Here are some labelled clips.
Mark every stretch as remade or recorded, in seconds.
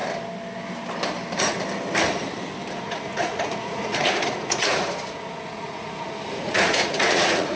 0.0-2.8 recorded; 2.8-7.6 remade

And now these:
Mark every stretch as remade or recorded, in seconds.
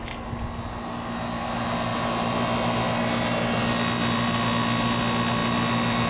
0.0-6.1 recorded